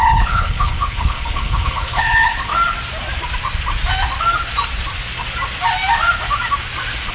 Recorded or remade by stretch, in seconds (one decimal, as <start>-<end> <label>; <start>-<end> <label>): 0.0-2.5 remade; 2.5-7.1 recorded